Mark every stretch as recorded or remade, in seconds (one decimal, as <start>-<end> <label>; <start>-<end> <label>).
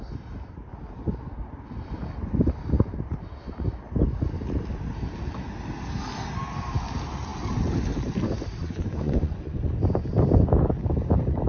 0.0-8.6 recorded; 8.6-9.7 remade; 9.7-11.5 recorded